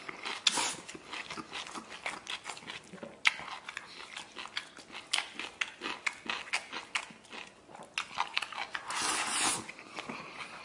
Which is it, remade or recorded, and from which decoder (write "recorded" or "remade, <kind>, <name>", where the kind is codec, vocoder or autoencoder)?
recorded